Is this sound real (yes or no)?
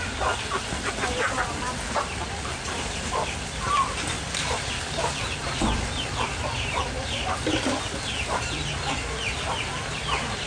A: yes